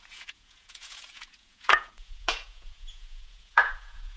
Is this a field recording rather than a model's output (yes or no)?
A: no